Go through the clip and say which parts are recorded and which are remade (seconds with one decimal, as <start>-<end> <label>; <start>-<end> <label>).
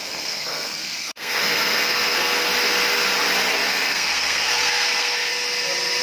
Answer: 0.0-2.5 remade; 2.5-3.7 recorded; 3.7-5.3 remade; 5.3-6.0 recorded